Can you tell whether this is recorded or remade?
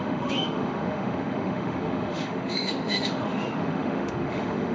remade